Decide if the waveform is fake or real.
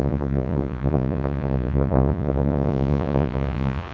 fake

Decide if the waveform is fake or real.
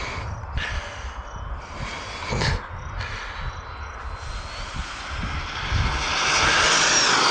real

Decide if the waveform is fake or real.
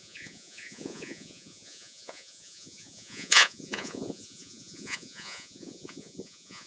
fake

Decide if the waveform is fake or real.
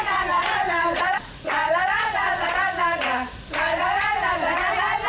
fake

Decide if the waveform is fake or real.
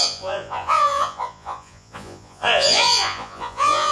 fake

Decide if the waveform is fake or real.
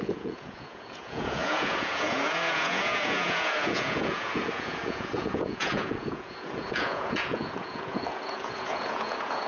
fake